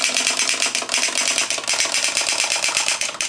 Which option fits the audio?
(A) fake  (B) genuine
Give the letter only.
B